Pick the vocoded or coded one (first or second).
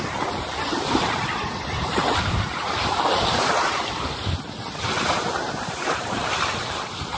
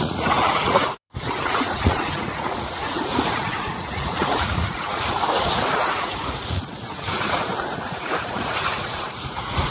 second